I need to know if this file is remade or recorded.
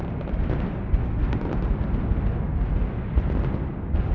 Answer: recorded